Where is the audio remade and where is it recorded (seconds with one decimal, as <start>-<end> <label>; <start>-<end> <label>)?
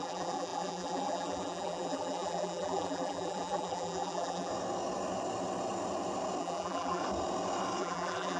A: 0.0-4.5 remade; 4.5-6.4 recorded; 6.4-7.0 remade; 7.0-7.8 recorded; 7.8-8.4 remade